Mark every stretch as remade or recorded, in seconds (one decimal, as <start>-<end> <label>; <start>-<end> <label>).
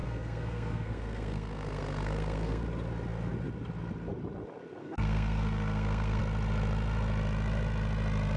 0.0-2.6 remade; 2.6-4.8 recorded; 4.8-6.2 remade; 6.2-8.4 recorded